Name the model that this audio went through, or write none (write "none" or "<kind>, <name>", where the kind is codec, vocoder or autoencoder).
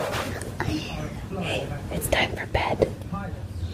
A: none